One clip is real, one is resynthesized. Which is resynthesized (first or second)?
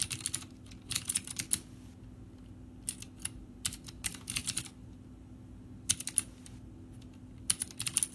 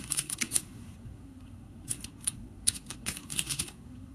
second